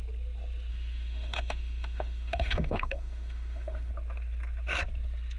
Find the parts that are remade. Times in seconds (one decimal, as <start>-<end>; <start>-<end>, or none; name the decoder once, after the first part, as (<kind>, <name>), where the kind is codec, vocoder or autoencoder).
0.7-3.9 (autoencoder, DAC-VAE)